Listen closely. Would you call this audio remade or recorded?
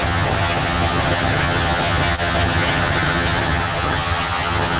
remade